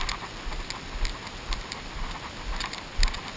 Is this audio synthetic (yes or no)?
no